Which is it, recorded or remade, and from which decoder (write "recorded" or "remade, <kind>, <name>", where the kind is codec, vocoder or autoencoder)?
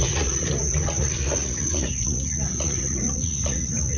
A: remade, vocoder, Vocos